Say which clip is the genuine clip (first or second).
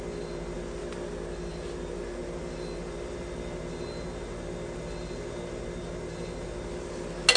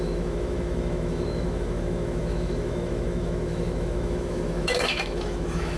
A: first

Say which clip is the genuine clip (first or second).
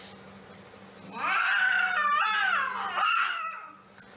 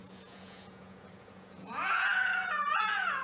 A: first